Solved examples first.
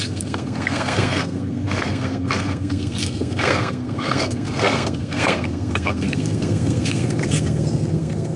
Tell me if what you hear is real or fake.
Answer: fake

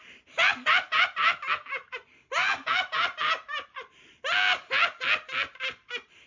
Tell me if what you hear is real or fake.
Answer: real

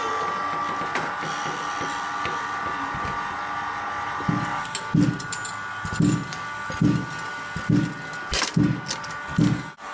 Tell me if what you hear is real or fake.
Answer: real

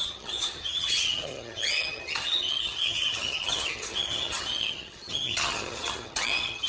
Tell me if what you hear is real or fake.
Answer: fake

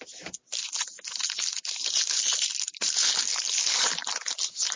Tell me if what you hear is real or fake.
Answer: fake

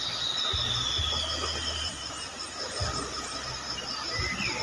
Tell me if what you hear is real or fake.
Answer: real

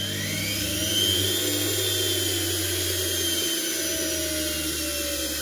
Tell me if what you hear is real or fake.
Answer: real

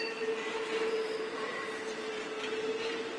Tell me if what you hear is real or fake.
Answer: real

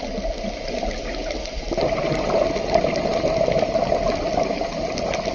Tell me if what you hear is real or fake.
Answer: real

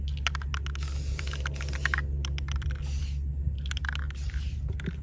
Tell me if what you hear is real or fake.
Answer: real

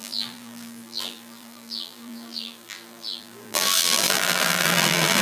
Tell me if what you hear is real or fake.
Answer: fake